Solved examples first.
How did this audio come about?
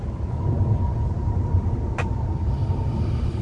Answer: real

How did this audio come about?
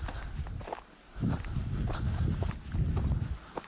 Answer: real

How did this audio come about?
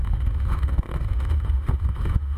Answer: fake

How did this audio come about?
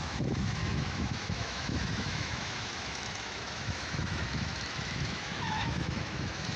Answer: fake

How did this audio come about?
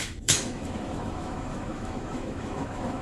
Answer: fake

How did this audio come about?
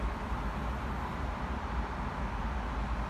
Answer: real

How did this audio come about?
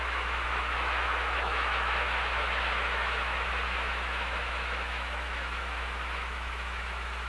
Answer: fake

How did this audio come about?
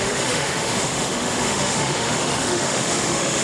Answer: fake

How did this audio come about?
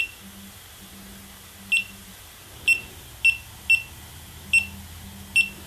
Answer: real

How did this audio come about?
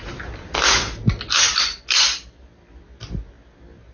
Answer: real